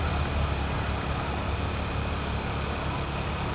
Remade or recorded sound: recorded